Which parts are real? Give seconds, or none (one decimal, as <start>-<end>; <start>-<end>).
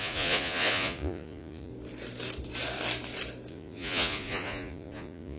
1.7-3.5